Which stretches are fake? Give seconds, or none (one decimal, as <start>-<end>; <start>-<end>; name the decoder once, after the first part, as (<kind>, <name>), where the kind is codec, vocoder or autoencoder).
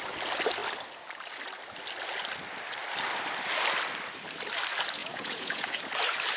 5.0-5.8 (vocoder, Vocos)